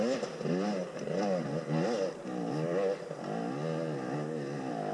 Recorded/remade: recorded